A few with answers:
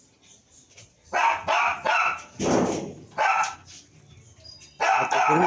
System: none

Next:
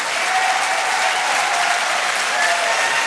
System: none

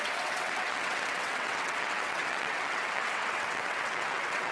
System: vocoder, WaveNeXt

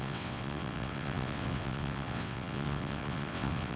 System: vocoder, WaveNeXt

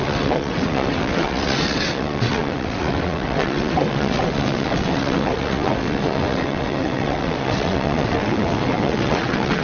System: vocoder, WaveNeXt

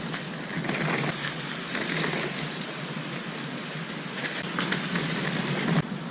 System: none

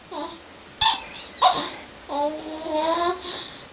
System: none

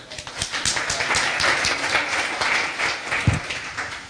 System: none